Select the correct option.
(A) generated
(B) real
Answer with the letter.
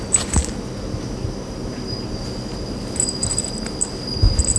B